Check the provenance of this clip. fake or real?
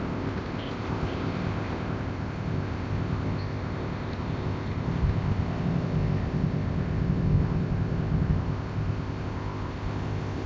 fake